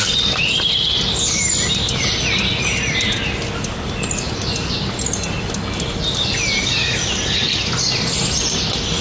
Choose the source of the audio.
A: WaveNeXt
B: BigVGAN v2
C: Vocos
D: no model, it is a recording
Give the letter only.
D